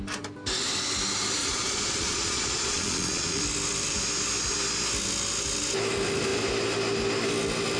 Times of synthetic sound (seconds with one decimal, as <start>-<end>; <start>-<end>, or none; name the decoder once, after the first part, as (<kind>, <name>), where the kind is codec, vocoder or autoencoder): 1.4-3.4 (vocoder, Vocos)